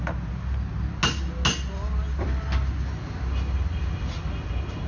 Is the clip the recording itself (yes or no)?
yes